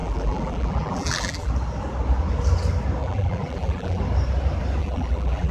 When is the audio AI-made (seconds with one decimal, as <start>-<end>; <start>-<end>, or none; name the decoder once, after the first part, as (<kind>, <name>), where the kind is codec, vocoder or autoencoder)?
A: 0.0-1.5 (vocoder, BigVGAN v2); 3.0-4.0; 4.8-5.5